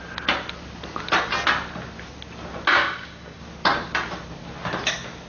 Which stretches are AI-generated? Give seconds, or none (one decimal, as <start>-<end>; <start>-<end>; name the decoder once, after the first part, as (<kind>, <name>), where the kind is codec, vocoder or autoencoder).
2.8-3.4 (codec, DAC)